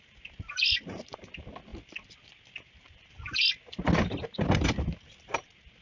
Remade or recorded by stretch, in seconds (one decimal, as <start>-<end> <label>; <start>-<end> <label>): 0.0-5.8 recorded